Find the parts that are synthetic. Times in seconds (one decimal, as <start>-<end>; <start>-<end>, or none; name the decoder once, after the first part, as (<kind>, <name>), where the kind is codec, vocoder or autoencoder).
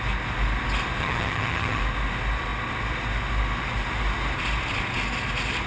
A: 1.0-1.8 (vocoder, HiFi-GAN)